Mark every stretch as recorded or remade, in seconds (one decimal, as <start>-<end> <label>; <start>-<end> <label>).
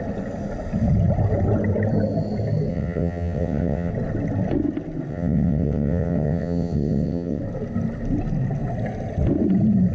0.0-2.7 recorded; 2.7-3.9 remade; 3.9-5.1 recorded; 5.1-7.4 remade; 7.4-9.9 recorded